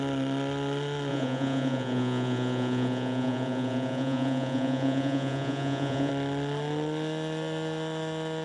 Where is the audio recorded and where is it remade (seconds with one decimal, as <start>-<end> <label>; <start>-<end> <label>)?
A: 0.0-1.1 recorded; 1.1-6.1 remade; 6.1-8.4 recorded